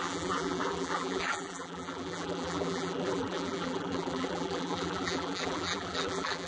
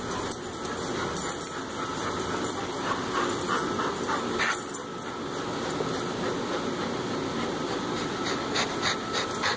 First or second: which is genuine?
second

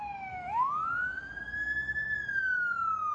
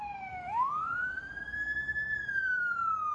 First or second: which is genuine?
first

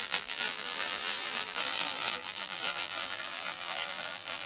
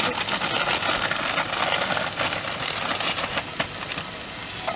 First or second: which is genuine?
second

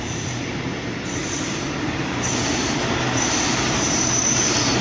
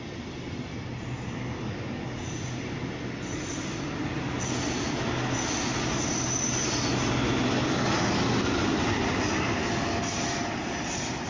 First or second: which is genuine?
second